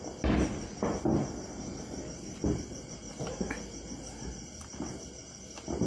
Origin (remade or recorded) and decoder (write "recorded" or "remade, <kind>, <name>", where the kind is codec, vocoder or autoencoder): recorded